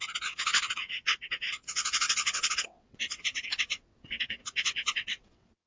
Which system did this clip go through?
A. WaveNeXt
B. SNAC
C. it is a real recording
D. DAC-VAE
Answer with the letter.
A